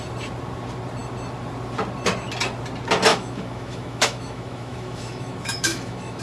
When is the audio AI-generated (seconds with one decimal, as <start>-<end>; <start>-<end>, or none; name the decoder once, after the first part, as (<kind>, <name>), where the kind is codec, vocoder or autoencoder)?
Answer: 3.1-6.2 (autoencoder, DAC-VAE)